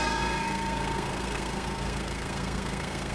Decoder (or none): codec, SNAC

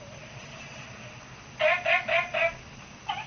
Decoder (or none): none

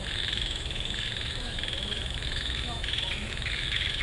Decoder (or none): autoencoder, DAC-VAE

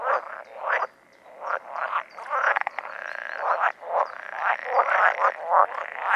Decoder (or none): none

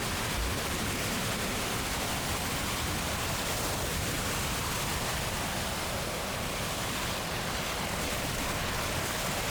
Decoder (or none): none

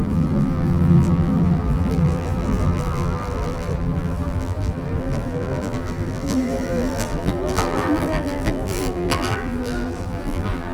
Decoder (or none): vocoder, BigVGAN v2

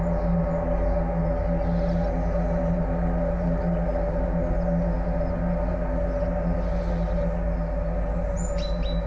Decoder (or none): none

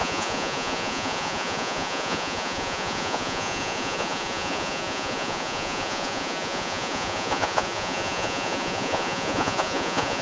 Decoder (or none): vocoder, Vocos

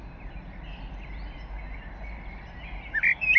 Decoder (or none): none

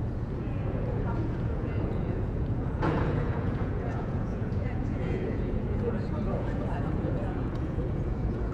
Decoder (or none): vocoder, Vocos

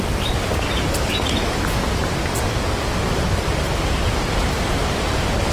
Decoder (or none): none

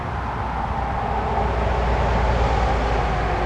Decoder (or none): none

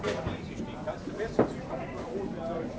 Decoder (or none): none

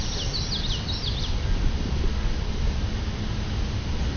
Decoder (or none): none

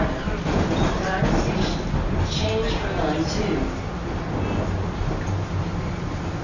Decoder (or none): none